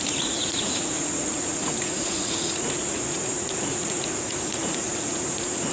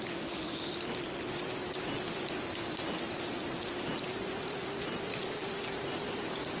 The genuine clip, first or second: second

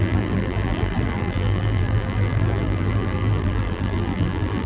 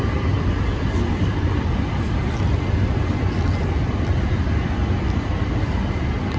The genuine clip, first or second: second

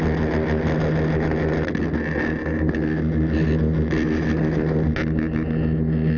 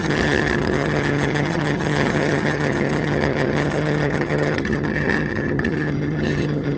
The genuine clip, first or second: first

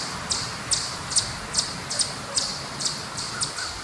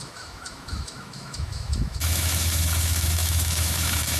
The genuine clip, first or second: first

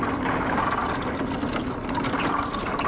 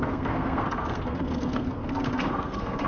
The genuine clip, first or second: first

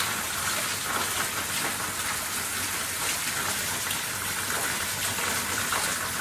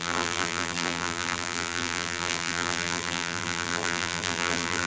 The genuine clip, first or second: first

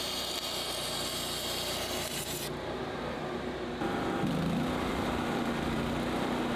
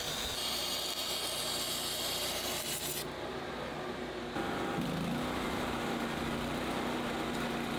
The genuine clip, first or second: second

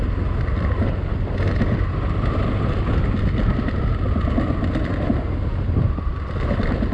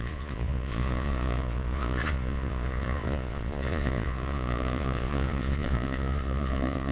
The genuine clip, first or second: first